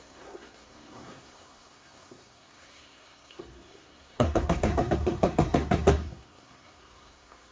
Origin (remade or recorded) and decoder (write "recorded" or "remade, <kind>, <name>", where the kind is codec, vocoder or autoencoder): remade, codec, SNAC